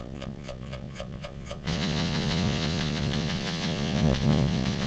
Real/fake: fake